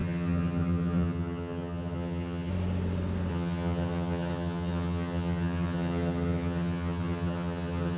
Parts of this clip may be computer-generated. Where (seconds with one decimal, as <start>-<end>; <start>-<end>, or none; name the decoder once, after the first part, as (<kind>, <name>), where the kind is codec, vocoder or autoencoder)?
0.0-2.5 (vocoder, HiFi-GAN); 3.3-8.0